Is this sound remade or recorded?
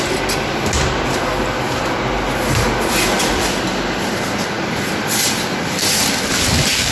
recorded